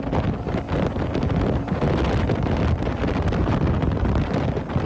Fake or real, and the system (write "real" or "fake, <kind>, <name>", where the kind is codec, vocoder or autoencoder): real